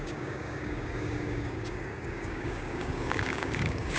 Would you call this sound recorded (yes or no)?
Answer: no